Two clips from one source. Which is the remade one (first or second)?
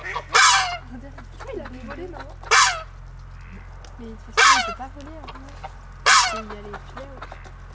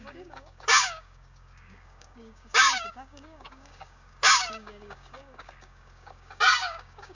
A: second